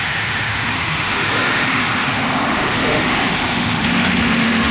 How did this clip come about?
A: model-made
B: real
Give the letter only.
A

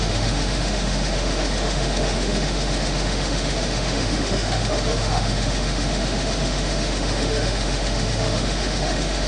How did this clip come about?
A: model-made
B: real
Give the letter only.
A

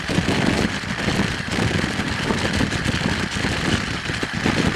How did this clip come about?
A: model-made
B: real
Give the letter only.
B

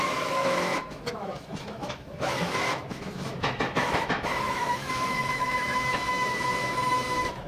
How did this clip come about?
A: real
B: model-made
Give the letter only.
B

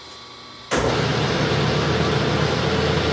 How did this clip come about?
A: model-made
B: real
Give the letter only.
B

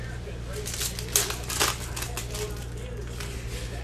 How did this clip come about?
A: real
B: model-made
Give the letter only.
A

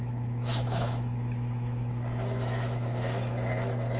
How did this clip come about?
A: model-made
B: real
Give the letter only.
A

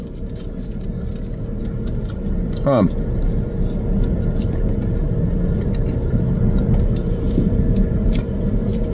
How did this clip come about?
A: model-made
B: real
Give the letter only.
B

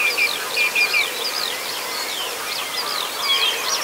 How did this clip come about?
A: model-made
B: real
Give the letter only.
B